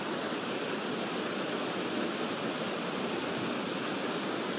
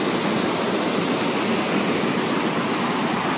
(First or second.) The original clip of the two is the second